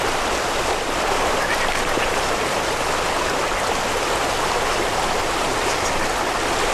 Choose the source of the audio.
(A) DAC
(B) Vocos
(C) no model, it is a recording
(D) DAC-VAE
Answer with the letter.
C